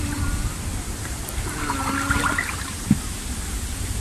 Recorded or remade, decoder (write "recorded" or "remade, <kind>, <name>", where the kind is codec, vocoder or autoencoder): recorded